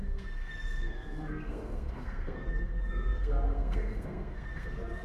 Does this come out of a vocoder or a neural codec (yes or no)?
yes